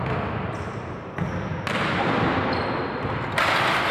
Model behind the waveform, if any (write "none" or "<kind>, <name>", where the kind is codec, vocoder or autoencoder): none